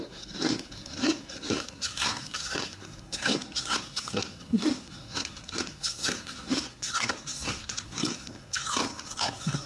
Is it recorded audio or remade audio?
remade